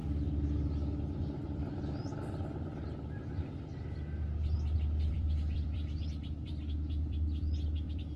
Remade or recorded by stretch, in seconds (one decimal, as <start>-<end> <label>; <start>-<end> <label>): 0.0-1.2 recorded; 1.2-2.1 remade; 2.1-5.1 recorded; 5.1-8.2 remade